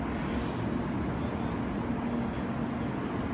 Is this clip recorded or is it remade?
recorded